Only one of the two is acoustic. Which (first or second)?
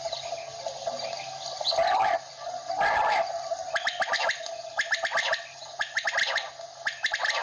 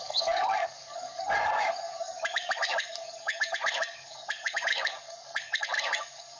first